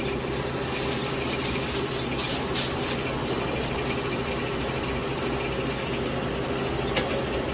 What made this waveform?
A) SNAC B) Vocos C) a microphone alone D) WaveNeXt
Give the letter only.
C